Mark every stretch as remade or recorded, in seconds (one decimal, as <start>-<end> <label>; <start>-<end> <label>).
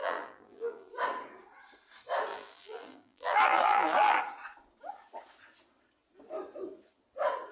0.0-0.9 remade; 0.9-2.3 recorded; 2.3-4.2 remade; 4.2-7.5 recorded